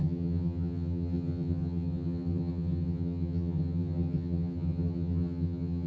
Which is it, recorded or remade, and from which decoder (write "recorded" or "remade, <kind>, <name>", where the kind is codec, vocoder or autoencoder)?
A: remade, vocoder, HiFi-GAN